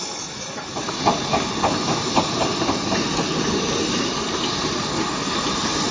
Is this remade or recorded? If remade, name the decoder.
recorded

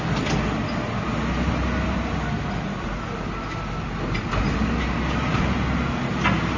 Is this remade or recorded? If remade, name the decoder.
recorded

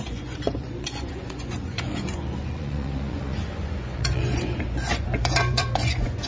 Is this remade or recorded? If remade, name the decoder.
remade, vocoder, Vocos